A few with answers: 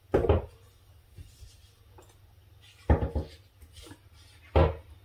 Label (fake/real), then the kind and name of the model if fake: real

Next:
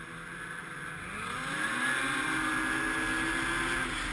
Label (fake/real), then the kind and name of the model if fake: real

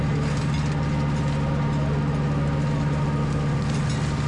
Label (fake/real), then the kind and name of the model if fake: real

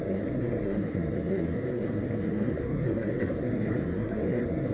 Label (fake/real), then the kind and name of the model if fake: fake, codec, SNAC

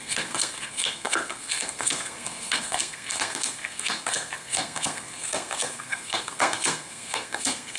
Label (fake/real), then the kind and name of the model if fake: fake, codec, SNAC